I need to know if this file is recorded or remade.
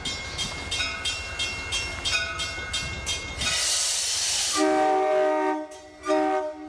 recorded